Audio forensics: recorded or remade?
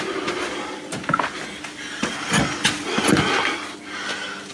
recorded